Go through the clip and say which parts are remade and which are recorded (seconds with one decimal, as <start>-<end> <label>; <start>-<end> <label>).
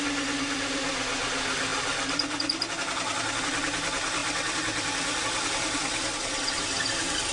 0.0-7.3 recorded